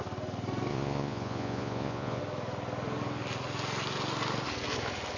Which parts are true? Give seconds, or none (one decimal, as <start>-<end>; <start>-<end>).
0.0-0.7; 2.2-5.2